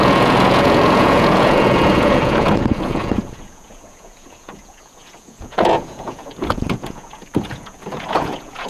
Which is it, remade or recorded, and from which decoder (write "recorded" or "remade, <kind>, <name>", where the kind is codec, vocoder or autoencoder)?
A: remade, vocoder, Vocos